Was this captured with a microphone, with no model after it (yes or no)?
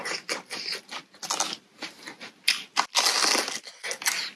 yes